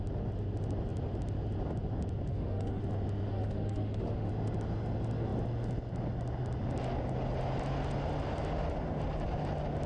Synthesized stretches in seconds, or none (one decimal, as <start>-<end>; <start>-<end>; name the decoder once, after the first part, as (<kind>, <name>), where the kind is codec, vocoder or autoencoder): 2.3-2.8 (autoencoder, DAC-VAE); 3.3-4.3